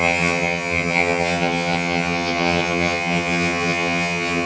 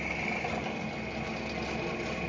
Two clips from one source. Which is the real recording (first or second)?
second